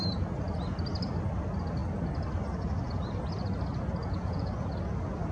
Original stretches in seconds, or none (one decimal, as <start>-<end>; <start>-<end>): 0.0-4.0; 4.5-5.3